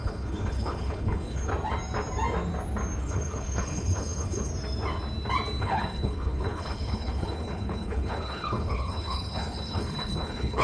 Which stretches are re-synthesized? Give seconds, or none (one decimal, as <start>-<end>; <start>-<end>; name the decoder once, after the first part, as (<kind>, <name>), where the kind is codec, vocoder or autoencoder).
0.0-1.5 (codec, HILCodec); 3.0-4.5; 5.6-10.6